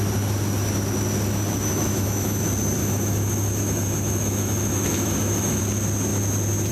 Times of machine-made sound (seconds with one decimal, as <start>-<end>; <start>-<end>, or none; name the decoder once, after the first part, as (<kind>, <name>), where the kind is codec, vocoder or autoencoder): 1.7-2.4 (autoencoder, DAC-VAE); 2.8-5.6